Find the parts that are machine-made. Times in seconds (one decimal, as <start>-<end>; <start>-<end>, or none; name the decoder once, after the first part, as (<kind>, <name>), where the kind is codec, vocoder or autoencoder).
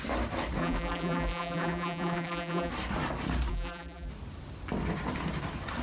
0.6-2.7 (vocoder, BigVGAN v2); 3.5-4.1